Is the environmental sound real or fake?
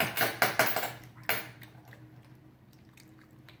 real